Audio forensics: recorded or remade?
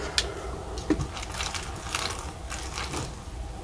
recorded